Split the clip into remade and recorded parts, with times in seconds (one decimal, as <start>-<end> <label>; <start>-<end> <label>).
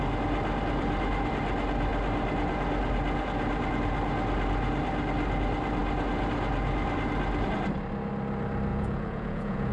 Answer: 0.0-8.7 recorded; 8.7-9.7 remade